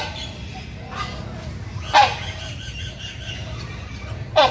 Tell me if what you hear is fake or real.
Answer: real